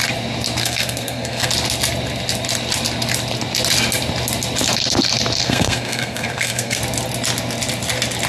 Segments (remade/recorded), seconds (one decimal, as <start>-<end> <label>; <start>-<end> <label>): 0.0-0.6 recorded; 0.6-1.5 remade; 1.5-5.4 recorded; 5.4-6.8 remade; 6.8-8.3 recorded